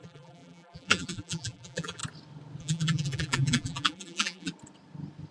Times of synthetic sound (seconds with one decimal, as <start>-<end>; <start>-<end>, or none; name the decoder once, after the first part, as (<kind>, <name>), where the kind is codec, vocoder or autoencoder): 0.0-2.0 (vocoder, BigVGAN v2); 2.6-4.5